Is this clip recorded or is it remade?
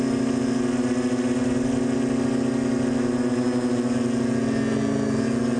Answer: recorded